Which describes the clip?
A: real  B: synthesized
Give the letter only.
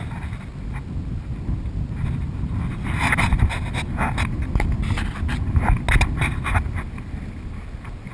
A